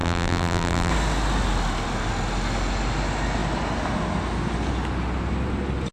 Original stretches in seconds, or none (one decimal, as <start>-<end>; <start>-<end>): 0.9-5.9